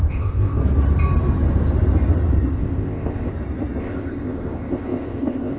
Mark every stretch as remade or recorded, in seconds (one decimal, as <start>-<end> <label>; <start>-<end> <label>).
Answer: 0.0-0.6 remade; 0.6-2.5 recorded; 2.5-3.3 remade; 3.3-3.8 recorded; 3.8-5.6 remade